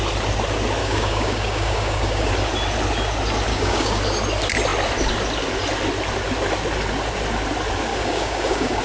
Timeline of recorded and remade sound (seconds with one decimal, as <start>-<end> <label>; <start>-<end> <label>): 0.0-0.8 recorded; 0.8-2.3 remade; 2.3-3.5 recorded; 3.5-4.0 remade; 4.0-7.9 recorded; 7.9-8.8 remade